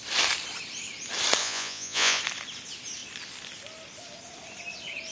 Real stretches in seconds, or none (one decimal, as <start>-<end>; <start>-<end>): 0.0-1.4; 2.2-5.1